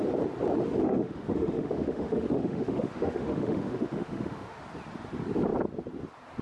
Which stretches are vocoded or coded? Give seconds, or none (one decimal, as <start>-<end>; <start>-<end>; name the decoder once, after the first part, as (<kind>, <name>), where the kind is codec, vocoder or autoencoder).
0.8-4.6 (autoencoder, DAC-VAE)